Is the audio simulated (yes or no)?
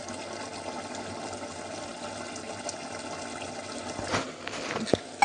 no